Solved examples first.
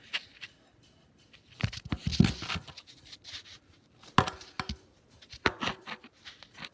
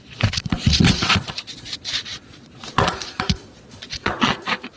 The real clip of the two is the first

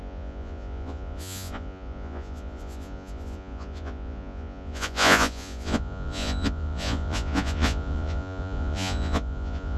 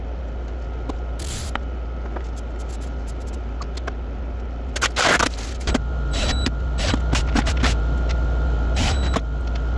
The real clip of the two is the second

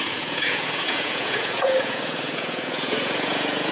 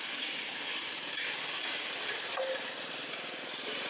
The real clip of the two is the second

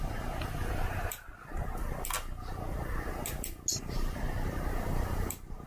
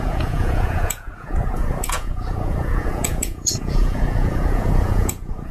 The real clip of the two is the first